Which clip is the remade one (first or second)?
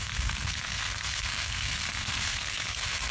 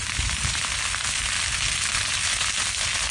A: first